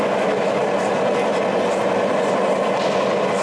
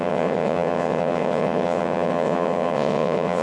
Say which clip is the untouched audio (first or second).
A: first